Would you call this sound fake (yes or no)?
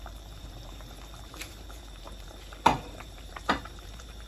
yes